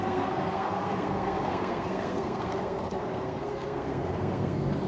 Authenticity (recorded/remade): remade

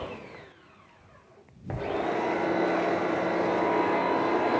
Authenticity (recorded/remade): recorded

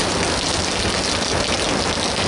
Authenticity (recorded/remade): recorded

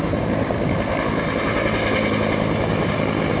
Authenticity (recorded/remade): recorded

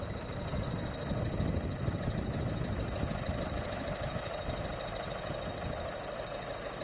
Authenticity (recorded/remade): recorded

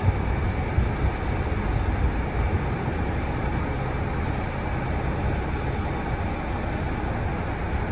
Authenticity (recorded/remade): recorded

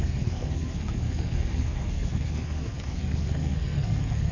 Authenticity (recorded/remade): remade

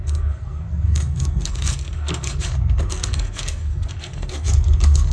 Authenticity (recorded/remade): remade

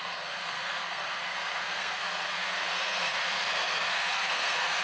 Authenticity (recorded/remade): remade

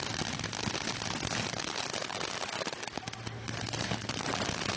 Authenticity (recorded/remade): recorded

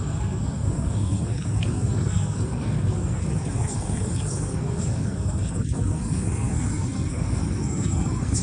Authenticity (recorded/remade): remade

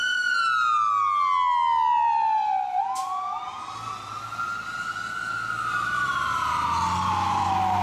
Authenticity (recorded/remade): recorded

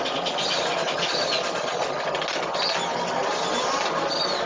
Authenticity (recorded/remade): recorded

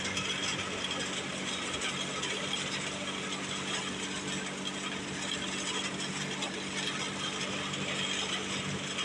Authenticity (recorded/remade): recorded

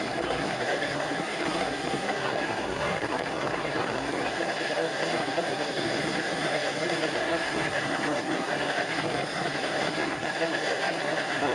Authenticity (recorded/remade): remade